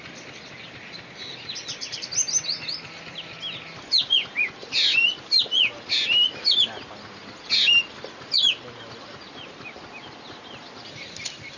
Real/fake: real